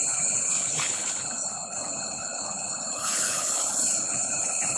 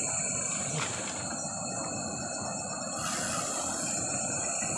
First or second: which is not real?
first